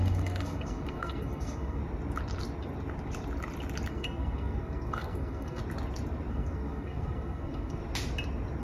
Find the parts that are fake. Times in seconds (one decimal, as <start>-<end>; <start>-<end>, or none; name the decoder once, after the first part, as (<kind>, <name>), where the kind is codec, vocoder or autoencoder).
0.0-1.8 (codec, SNAC); 3.9-5.6; 6.3-7.8